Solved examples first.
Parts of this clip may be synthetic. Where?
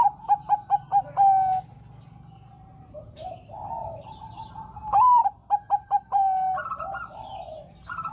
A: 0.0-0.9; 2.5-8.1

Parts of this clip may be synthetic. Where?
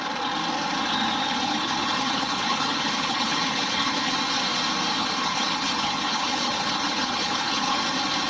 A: 1.2-4.1; 5.0-7.8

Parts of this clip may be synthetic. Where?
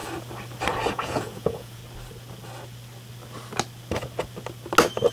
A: 0.9-1.8